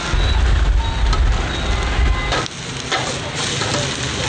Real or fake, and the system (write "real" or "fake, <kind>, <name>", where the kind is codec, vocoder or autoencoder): real